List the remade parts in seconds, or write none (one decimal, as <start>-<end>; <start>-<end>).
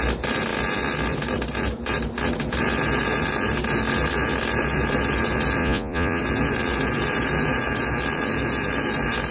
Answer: 5.6-6.2